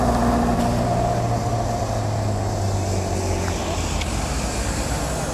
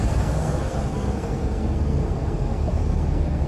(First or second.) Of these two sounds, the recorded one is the first